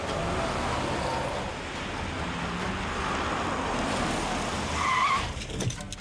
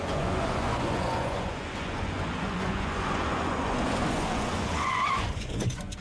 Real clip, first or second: first